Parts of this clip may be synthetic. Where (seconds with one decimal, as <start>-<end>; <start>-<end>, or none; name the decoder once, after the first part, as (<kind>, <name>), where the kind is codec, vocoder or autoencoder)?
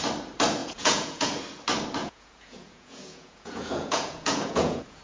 0.6-1.4 (vocoder, Vocos); 2.0-5.0